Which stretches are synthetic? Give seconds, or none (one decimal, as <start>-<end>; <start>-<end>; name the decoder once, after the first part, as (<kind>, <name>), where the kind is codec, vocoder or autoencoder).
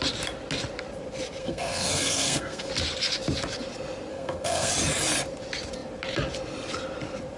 1.4-2.7 (codec, SNAC); 4.1-4.7